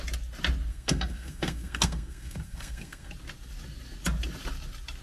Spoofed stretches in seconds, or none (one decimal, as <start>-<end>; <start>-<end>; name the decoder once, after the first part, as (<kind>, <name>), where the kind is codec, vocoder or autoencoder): 0.7-3.1 (codec, SNAC)